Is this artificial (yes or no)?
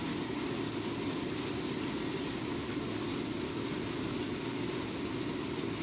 no